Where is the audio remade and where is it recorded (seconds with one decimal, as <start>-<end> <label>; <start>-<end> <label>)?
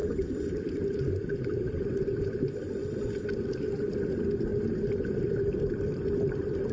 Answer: 0.0-6.7 recorded